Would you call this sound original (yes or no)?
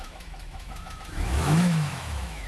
no